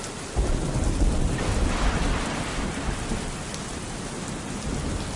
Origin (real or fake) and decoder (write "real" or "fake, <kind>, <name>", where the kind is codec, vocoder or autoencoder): real